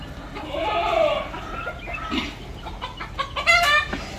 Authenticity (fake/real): real